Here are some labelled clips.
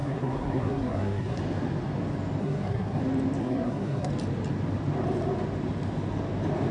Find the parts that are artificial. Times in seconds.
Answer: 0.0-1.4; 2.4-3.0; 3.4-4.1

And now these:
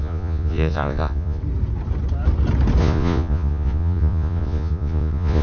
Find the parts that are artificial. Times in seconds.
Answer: 0.0-1.4; 2.8-5.4